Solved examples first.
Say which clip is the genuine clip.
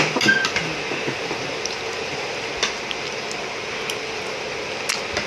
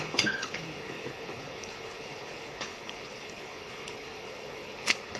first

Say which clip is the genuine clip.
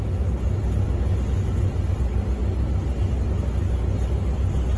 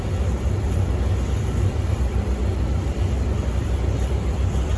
first